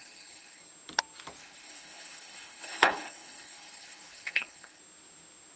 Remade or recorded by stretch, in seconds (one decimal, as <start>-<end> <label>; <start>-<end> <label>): 0.0-0.6 remade; 0.6-1.4 recorded; 1.4-4.8 remade; 4.8-5.6 recorded